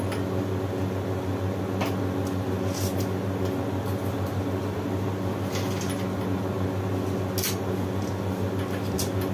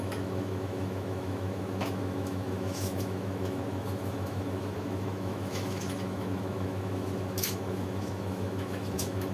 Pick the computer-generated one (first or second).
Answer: second